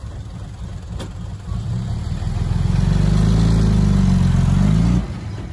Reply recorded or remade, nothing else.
recorded